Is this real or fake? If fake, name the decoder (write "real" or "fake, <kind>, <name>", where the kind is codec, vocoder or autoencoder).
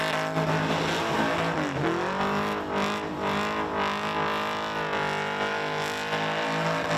real